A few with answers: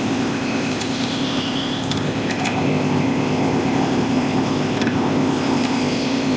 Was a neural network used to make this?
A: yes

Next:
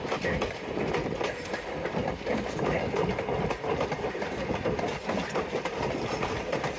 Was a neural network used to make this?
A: no